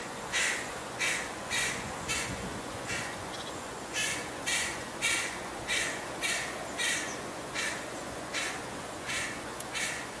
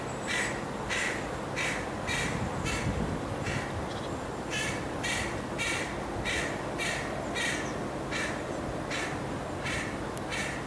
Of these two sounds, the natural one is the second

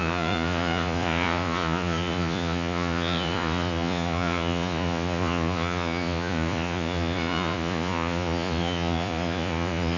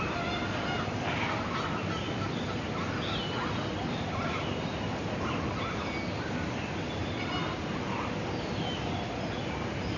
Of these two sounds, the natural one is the second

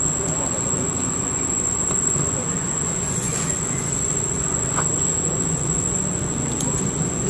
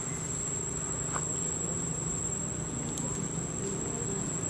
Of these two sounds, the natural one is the second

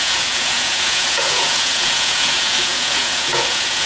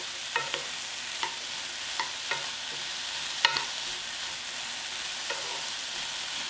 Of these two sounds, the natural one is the second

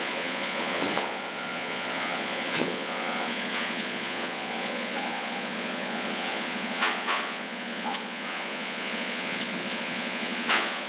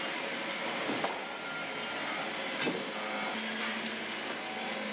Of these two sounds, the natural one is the second